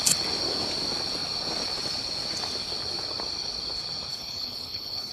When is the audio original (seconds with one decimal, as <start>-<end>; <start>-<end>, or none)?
0.0-4.1